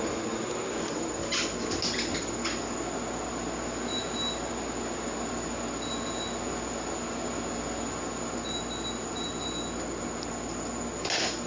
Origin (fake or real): real